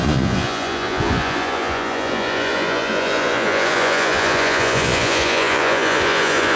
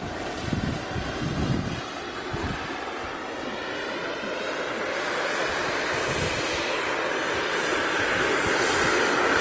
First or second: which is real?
second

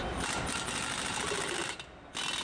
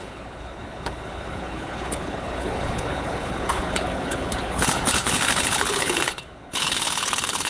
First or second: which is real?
first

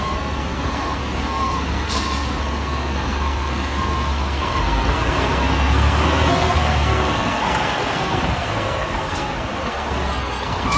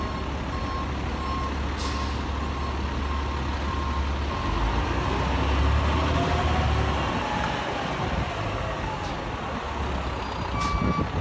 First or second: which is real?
second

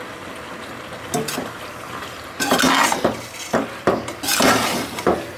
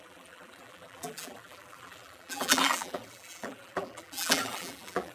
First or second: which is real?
first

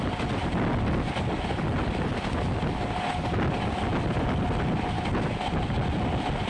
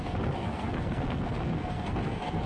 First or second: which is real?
first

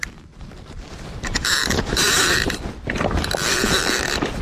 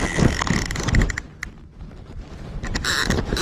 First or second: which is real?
second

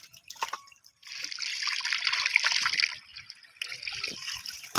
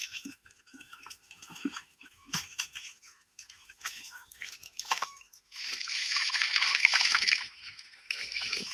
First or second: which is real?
first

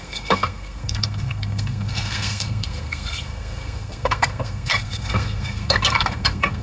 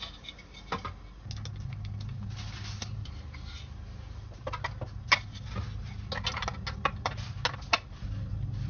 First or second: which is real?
second